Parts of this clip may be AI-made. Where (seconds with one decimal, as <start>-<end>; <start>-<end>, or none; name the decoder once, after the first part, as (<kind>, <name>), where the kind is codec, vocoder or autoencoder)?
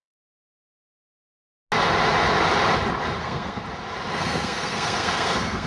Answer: 0.0-1.3 (codec, SNAC); 3.2-3.6; 4.1-5.7